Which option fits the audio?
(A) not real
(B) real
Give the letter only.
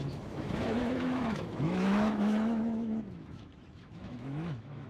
A